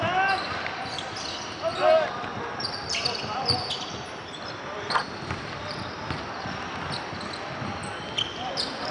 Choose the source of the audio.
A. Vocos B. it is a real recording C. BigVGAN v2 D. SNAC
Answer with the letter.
B